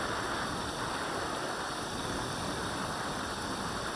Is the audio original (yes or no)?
yes